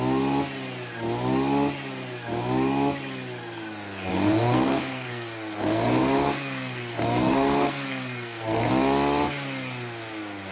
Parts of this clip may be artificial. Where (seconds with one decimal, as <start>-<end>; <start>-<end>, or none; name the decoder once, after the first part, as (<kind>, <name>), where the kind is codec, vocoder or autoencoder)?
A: 4.1-8.7 (codec, SNAC)